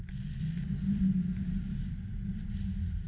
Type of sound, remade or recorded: recorded